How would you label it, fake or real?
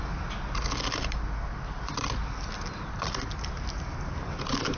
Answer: real